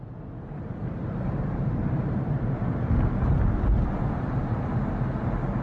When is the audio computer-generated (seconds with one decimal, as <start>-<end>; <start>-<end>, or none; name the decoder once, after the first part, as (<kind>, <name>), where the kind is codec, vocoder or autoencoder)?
0.8-3.7 (vocoder, BigVGAN v2)